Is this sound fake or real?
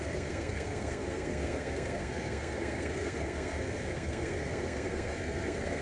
fake